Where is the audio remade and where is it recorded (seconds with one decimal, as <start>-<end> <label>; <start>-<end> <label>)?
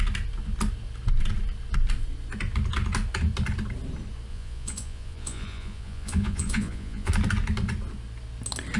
0.0-4.3 recorded; 4.3-7.1 remade; 7.1-8.8 recorded